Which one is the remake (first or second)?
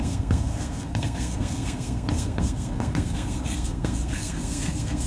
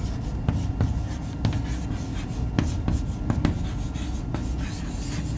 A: first